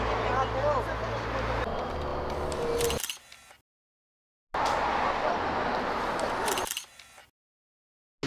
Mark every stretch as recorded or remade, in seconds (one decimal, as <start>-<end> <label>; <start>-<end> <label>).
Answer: 0.0-8.3 recorded